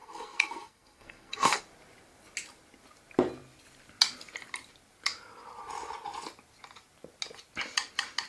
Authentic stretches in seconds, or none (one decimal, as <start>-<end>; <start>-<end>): 1.6-8.3